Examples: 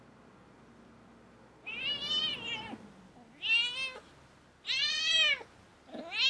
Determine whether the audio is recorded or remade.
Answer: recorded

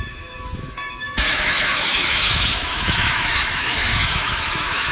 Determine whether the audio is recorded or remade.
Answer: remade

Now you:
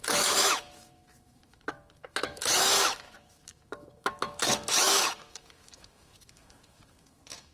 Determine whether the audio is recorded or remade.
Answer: remade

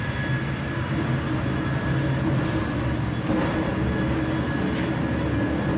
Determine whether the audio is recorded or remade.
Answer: recorded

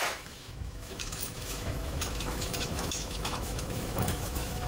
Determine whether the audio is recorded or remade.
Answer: remade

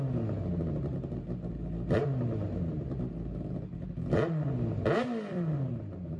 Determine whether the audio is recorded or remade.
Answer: recorded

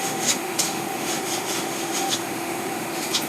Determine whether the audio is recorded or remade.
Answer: remade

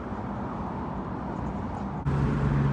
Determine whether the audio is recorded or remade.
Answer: recorded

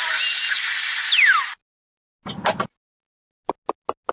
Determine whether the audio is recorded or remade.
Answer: recorded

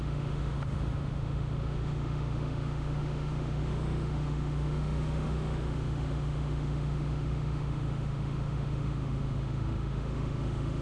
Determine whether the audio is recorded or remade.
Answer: remade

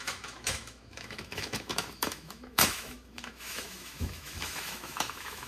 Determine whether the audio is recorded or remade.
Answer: remade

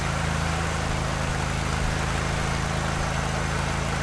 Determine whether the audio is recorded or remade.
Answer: recorded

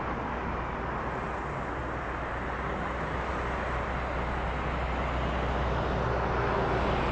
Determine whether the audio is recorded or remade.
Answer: recorded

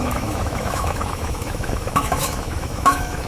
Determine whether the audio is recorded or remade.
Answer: remade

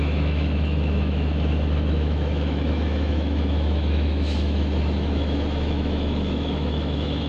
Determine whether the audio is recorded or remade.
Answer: remade